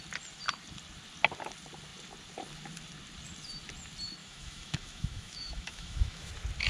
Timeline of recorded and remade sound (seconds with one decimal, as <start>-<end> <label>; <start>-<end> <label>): 0.0-4.2 recorded; 4.2-6.3 remade; 6.3-6.7 recorded